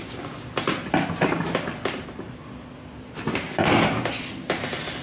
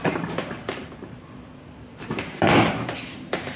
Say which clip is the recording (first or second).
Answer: first